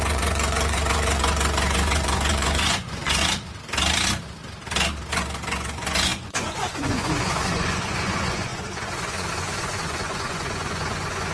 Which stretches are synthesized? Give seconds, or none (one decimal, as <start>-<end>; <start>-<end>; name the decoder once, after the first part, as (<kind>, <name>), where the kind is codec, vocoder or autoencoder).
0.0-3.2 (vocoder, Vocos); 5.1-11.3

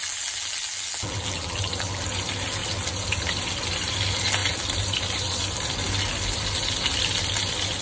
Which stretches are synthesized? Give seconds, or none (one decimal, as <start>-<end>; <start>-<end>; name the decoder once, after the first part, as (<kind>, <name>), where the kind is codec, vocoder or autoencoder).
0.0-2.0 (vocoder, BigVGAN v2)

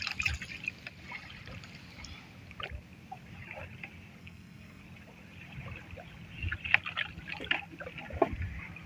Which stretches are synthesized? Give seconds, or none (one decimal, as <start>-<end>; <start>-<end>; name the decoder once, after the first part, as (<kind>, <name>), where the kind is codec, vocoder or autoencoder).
4.2-4.8 (codec, SNAC)

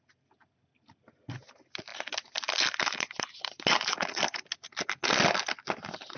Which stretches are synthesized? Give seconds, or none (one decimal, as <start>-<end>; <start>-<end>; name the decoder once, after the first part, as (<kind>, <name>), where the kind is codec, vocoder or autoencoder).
none

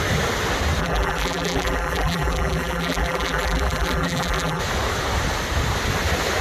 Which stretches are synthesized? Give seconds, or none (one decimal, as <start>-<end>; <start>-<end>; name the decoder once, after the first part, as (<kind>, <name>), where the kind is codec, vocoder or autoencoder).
0.8-4.6 (vocoder, BigVGAN v2)